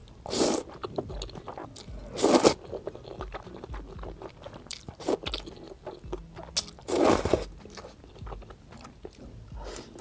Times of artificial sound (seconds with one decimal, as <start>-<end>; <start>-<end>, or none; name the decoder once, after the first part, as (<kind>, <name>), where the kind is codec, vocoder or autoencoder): none

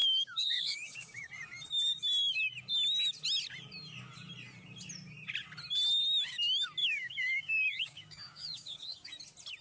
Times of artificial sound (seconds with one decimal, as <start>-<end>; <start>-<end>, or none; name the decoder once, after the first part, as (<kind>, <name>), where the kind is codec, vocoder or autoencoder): 0.0-1.3 (codec, DAC); 6.8-9.1

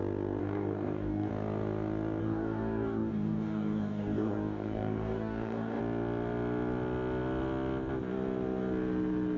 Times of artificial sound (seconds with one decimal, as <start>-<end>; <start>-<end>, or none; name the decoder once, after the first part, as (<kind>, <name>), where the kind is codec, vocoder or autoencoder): 0.4-1.3 (codec, DAC); 2.2-5.8

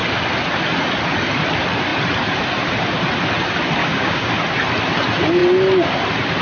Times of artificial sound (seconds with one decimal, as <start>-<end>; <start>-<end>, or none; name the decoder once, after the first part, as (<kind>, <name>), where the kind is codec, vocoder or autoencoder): 3.8-4.3 (codec, DAC)

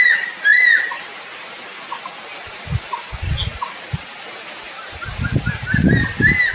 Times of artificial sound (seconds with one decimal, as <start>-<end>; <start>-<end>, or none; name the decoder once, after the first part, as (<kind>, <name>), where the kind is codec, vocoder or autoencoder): none

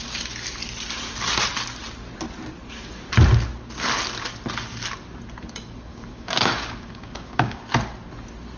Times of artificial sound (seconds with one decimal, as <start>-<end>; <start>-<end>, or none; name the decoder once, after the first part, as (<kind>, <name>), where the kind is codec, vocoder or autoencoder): 5.9-7.6 (codec, DAC)

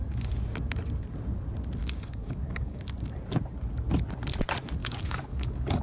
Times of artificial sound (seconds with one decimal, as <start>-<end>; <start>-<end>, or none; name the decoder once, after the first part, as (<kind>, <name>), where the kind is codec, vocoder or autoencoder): 1.8-2.8 (codec, DAC); 4.8-5.8